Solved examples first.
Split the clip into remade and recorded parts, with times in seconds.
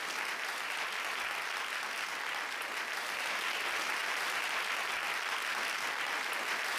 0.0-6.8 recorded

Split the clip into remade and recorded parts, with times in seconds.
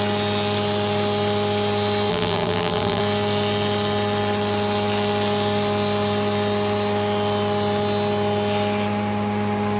0.0-2.1 recorded; 2.1-3.0 remade; 3.0-9.8 recorded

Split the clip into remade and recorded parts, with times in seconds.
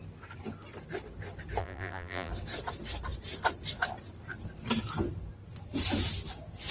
0.0-1.6 recorded; 1.6-2.3 remade; 2.3-6.7 recorded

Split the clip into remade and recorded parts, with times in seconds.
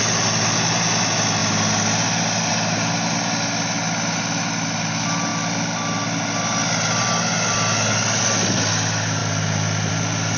0.0-10.4 recorded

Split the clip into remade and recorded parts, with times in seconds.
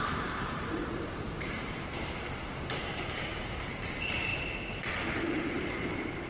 0.0-4.3 remade; 4.3-5.1 recorded; 5.1-6.3 remade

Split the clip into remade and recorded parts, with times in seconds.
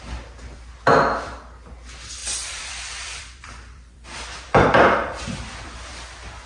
0.0-2.2 recorded; 2.2-5.9 remade; 5.9-6.5 recorded